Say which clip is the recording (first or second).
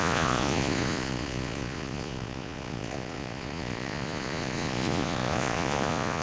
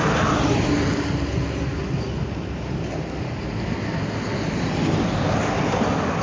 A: second